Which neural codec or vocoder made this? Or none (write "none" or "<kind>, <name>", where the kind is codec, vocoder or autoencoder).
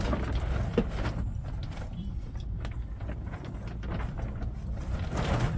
none